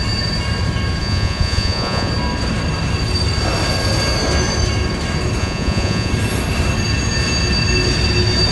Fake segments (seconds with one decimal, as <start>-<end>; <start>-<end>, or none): 1.0-2.1; 5.4-6.1